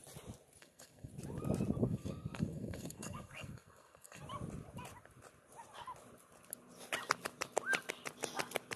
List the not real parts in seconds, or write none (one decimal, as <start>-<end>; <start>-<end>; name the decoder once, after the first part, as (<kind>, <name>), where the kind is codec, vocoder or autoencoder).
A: 0.6-1.1 (codec, SNAC); 1.8-4.2